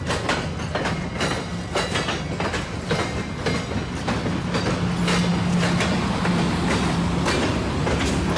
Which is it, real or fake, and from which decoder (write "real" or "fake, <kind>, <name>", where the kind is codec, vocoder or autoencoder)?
real